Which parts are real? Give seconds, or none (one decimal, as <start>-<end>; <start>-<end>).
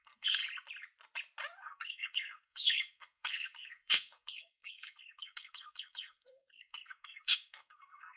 0.4-1.6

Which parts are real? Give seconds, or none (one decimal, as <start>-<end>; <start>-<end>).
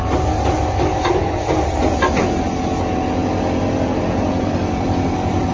0.0-5.5